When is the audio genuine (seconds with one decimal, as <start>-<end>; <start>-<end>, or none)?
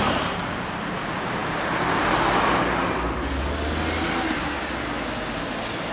0.0-5.9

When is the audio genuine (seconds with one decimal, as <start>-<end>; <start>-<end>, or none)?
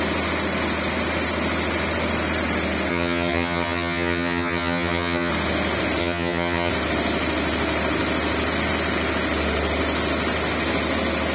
0.0-2.9; 5.3-6.0; 6.7-11.3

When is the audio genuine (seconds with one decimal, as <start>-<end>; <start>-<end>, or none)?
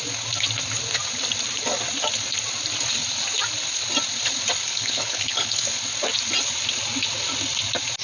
0.0-4.6; 5.7-8.0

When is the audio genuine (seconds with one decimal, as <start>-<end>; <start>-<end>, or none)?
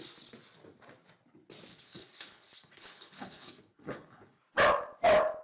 0.0-1.7; 4.4-5.4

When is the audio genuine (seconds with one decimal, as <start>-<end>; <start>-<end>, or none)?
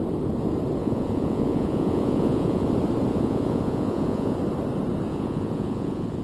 0.0-0.8; 2.7-3.1; 4.4-5.1